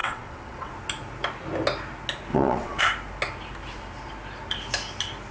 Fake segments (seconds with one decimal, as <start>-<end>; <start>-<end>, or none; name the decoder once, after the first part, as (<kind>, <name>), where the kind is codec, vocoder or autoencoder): 0.0-0.7 (vocoder, WaveNeXt); 2.3-2.8